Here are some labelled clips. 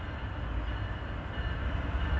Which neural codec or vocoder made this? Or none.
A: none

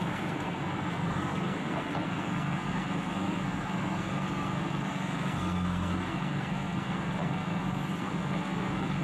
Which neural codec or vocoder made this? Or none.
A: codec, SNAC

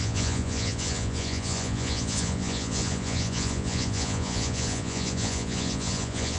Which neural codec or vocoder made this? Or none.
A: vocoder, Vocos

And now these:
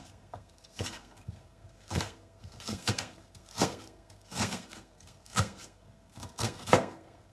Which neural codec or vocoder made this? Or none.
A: codec, SNAC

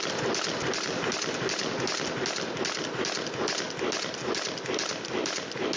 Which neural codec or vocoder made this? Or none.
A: none